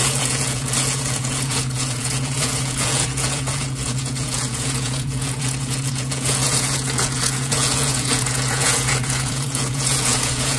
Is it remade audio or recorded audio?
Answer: remade